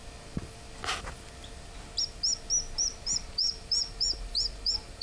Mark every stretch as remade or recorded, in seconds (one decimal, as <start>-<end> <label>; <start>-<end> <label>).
0.0-2.8 recorded; 2.8-5.0 remade